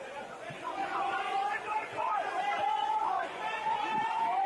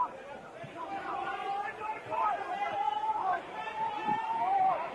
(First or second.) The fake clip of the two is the first